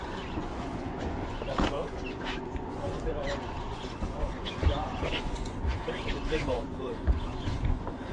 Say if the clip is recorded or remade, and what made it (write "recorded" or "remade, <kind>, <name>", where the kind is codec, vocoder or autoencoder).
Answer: remade, vocoder, Vocos